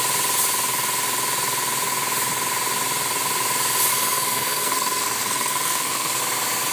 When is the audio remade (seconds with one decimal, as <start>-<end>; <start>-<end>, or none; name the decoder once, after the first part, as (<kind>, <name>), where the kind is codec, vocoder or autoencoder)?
3.9-6.2 (codec, SNAC)